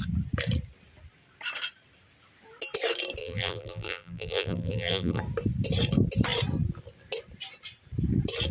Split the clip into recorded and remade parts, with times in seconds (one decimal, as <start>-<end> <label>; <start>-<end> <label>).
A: 0.0-3.2 recorded; 3.2-5.2 remade; 5.2-8.5 recorded